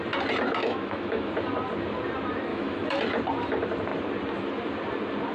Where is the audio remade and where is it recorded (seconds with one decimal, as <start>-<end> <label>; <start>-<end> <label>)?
0.0-0.6 recorded; 0.6-1.3 remade; 1.3-2.5 recorded; 2.5-3.0 remade; 3.0-5.3 recorded